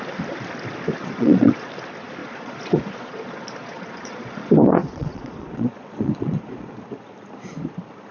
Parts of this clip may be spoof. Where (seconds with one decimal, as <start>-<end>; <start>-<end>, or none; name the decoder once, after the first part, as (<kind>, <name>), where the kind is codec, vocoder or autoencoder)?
1.0-1.7 (vocoder, Vocos); 2.2-6.8